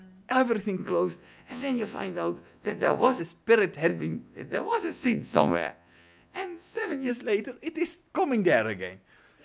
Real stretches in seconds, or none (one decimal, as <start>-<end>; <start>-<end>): 0.0-0.8; 3.2-3.9; 7.1-9.4